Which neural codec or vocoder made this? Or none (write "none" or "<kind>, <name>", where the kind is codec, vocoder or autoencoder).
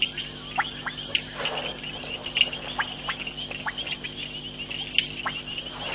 none